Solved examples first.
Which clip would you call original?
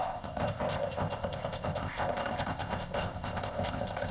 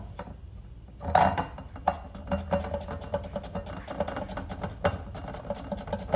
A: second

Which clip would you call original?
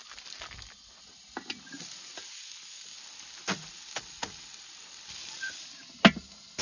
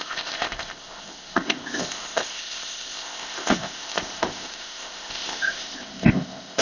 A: first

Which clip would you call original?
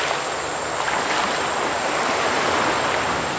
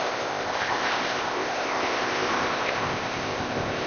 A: first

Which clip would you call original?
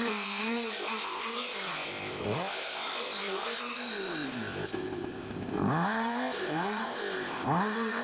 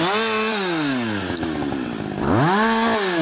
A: second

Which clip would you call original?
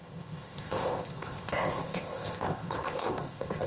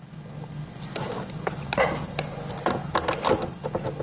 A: second